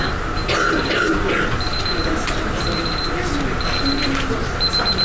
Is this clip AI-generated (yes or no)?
no